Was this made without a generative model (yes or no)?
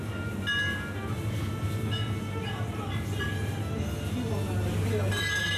yes